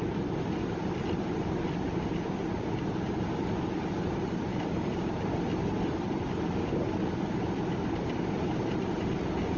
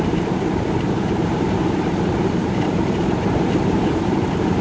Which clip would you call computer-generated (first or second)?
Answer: second